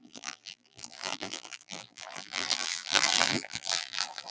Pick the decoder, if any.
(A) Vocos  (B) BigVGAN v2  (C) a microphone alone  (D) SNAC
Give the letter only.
B